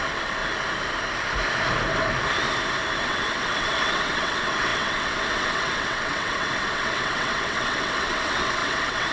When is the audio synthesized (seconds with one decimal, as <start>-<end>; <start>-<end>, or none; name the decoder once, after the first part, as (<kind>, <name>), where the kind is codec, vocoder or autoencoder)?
0.0-0.4 (vocoder, WaveNeXt); 3.0-9.1

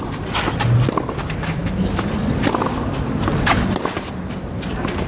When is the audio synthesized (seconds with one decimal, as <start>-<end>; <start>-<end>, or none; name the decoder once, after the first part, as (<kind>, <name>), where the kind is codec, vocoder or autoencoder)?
none

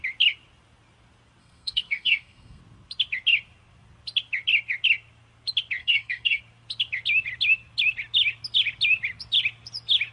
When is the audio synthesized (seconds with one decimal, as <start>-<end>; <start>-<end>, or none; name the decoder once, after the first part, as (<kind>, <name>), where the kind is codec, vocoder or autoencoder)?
1.4-2.6 (codec, SNAC); 5.8-6.4

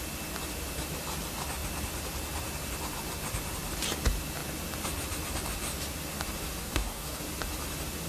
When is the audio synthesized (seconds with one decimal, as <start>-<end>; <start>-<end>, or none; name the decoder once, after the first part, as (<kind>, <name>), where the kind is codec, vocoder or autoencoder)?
6.6-7.2 (codec, DAC)

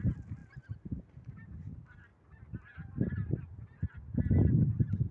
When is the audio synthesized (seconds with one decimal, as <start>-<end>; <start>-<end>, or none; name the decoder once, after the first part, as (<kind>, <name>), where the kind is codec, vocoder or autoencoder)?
2.1-3.3 (vocoder, BigVGAN v2)

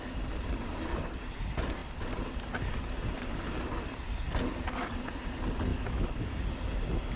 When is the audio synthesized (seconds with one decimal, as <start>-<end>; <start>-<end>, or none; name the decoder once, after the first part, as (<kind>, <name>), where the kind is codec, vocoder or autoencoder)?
5.7-6.4 (autoencoder, DAC-VAE)

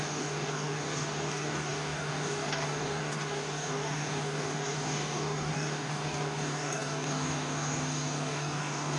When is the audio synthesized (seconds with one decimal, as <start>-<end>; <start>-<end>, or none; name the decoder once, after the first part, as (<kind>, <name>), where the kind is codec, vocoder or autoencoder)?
0.0-9.0 (codec, DAC)